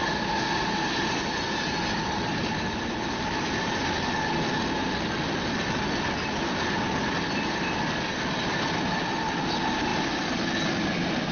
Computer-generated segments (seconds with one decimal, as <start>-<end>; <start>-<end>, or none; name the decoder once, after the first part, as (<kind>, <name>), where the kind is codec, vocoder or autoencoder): none